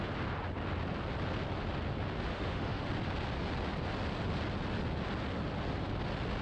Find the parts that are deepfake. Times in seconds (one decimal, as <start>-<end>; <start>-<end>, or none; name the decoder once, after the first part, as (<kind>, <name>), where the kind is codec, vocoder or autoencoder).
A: 2.3-2.9 (autoencoder, DAC-VAE)